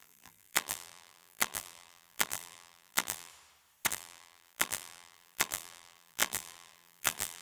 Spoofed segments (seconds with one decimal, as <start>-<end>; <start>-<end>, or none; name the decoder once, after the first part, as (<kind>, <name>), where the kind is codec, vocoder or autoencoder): 0.0-3.3 (vocoder, BigVGAN v2); 3.9-7.4